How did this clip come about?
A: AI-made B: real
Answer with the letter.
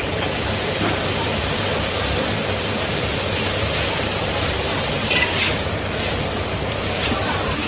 A